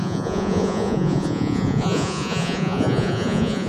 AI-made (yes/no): yes